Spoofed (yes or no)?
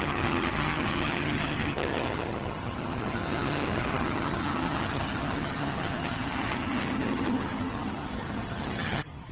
yes